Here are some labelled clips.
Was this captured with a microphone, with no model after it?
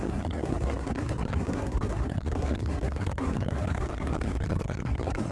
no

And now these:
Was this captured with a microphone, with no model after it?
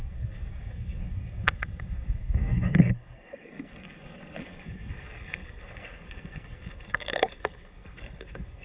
no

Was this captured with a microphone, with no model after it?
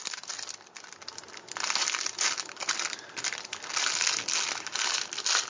yes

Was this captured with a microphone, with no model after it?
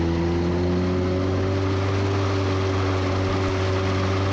yes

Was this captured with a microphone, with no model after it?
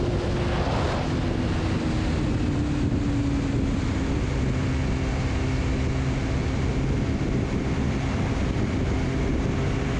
yes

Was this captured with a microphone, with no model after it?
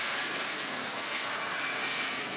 no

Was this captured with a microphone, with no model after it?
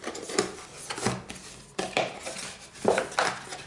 yes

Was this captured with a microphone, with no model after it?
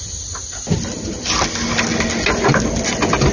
yes